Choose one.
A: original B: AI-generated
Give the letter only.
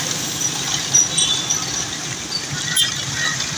A